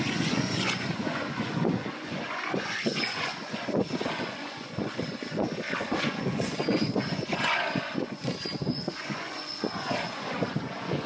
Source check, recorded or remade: remade